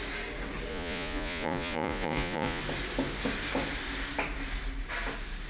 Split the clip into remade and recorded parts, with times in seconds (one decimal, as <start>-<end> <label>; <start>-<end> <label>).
0.0-0.7 recorded; 0.7-2.6 remade; 2.6-5.5 recorded